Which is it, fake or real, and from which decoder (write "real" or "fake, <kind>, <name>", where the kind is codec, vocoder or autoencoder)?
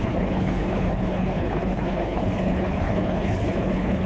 fake, codec, HILCodec